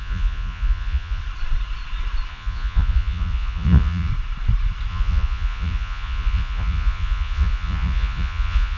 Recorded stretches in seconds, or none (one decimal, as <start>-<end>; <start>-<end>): 1.2-2.3; 4.1-4.9